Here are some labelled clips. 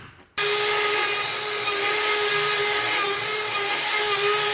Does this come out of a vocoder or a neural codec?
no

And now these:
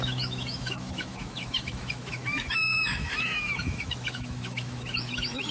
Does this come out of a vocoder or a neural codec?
yes